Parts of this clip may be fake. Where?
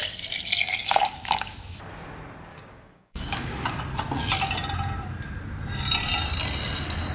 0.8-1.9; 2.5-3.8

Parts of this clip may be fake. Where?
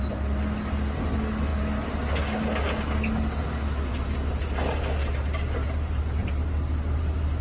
5.0-7.0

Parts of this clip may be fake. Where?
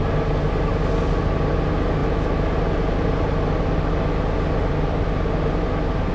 none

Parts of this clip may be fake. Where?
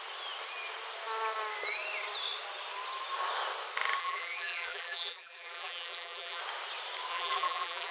4.0-6.4; 7.1-7.9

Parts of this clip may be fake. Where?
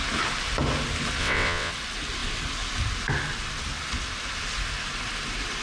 1.2-1.7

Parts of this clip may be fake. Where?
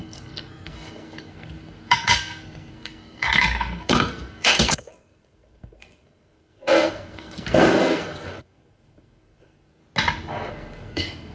0.0-9.8; 10.5-11.3